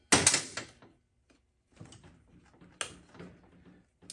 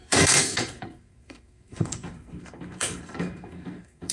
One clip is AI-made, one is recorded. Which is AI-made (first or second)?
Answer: second